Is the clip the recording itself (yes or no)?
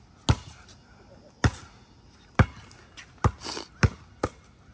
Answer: yes